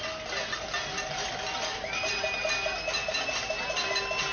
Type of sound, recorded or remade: recorded